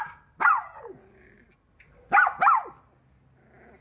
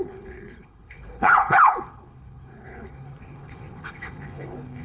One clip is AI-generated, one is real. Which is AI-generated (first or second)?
second